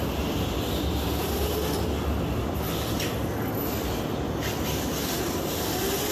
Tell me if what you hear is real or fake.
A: real